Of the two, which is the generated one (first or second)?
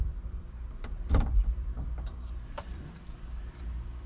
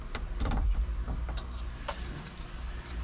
first